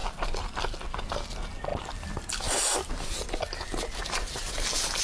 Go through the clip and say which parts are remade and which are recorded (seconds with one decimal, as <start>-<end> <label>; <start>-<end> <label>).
0.0-1.7 recorded; 1.7-5.0 remade